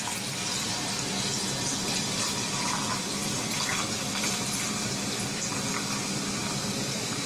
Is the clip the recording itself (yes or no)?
yes